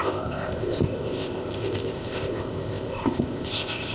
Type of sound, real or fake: fake